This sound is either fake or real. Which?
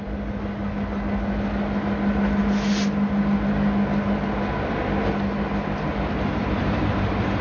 real